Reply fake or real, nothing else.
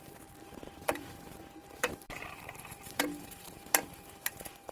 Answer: fake